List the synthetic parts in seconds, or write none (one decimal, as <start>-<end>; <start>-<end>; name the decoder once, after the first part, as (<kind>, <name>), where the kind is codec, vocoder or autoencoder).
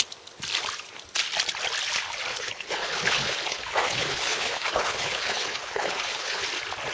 2.3-6.4 (codec, HILCodec)